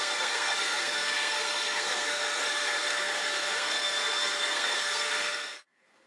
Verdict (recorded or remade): remade